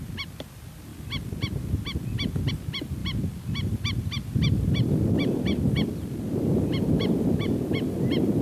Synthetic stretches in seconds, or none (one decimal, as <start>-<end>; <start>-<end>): none